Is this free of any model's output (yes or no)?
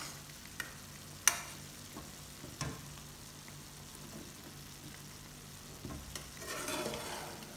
yes